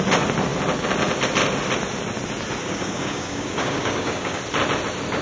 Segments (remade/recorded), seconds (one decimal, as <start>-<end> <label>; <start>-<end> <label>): 0.0-2.6 recorded; 2.6-4.4 remade; 4.4-5.2 recorded